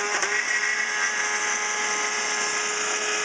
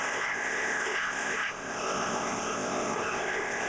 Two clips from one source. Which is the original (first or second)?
first